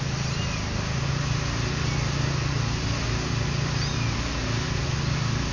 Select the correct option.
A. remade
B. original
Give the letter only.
B